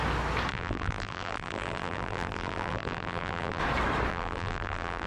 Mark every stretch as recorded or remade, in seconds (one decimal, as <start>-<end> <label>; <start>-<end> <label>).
0.0-0.5 recorded; 0.5-3.6 remade; 3.6-4.1 recorded; 4.1-5.1 remade